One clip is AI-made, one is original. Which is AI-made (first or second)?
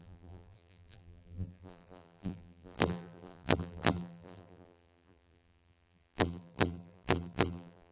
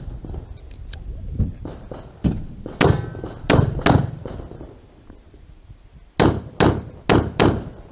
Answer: first